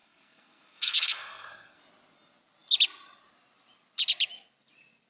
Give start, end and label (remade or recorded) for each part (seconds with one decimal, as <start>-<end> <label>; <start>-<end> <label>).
0.0-1.8 remade; 1.8-5.1 recorded